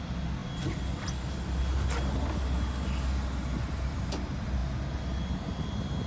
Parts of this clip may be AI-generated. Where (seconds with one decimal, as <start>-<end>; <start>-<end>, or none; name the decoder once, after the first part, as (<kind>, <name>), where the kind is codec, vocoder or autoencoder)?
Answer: none